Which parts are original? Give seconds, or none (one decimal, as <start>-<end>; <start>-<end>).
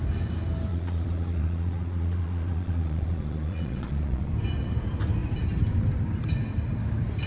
0.0-0.7; 4.3-7.3